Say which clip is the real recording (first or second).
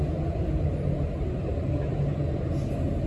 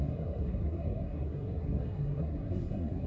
first